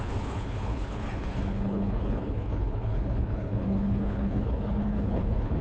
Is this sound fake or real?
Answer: fake